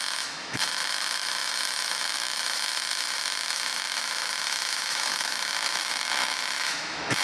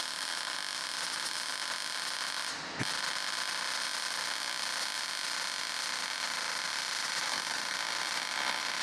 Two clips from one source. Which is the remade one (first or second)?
first